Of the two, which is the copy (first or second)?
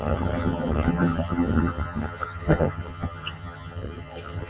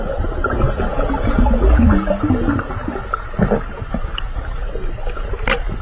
first